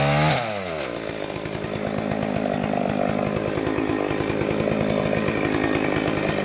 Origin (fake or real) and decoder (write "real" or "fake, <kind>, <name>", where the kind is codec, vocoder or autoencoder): real